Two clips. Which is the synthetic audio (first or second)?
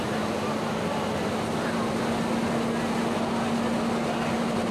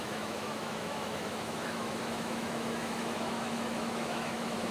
second